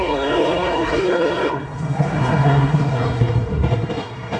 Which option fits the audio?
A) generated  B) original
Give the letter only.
A